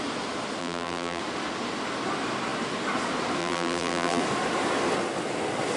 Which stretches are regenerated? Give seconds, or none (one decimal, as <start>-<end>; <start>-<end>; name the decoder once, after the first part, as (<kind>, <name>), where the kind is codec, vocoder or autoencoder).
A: 0.6-1.2 (vocoder, BigVGAN v2); 3.4-4.2